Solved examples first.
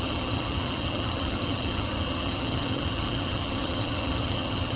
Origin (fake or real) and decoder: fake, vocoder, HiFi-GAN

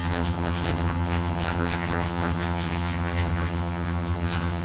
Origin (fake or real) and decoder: fake, vocoder, HiFi-GAN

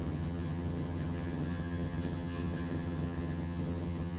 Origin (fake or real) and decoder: fake, vocoder, HiFi-GAN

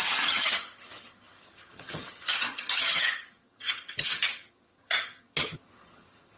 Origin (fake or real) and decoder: fake, vocoder, HiFi-GAN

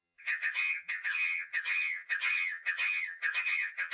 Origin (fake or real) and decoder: fake, vocoder, HiFi-GAN